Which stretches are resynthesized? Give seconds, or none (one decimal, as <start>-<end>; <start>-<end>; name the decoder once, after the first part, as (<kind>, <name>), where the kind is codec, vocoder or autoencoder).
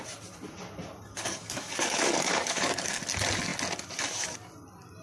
1.1-3.0 (codec, DAC)